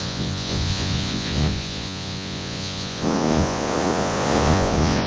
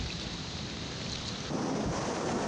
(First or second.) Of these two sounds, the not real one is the first